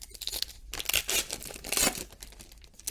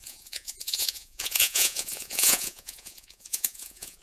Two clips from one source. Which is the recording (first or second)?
first